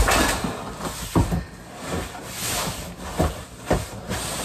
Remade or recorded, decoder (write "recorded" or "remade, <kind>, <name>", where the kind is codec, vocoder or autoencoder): recorded